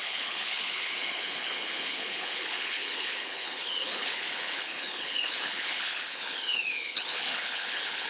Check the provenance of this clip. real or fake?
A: fake